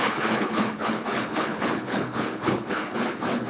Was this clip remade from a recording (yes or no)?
yes